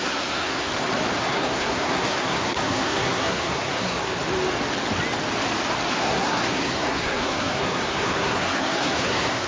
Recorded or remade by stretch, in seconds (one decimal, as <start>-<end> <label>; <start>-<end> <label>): 0.0-0.7 remade; 0.7-1.2 recorded; 1.2-4.1 remade; 4.1-5.9 recorded; 5.9-9.5 remade